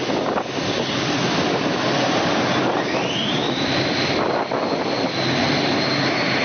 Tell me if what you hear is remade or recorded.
recorded